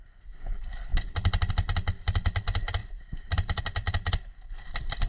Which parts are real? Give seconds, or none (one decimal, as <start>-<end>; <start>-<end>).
0.0-2.8; 3.6-5.1